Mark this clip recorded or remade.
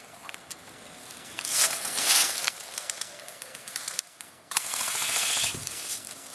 remade